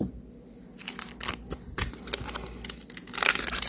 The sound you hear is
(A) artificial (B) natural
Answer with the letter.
B